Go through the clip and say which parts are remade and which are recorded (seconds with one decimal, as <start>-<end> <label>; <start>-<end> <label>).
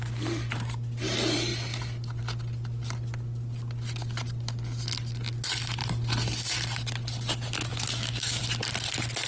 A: 0.0-7.7 recorded; 7.7-8.4 remade; 8.4-9.3 recorded